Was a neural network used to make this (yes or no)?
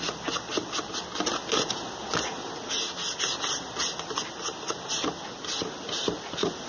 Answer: no